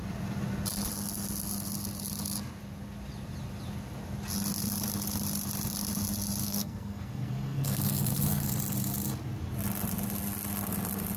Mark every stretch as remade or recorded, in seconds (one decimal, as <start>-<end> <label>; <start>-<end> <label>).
0.0-6.4 recorded; 6.4-8.5 remade; 8.5-11.2 recorded